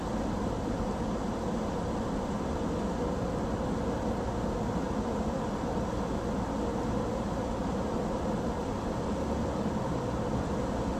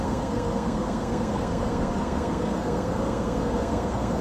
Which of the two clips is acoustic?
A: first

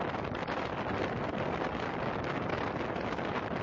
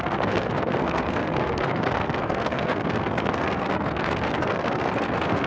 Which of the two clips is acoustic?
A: first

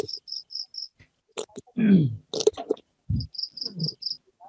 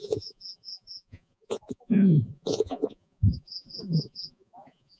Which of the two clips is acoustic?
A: first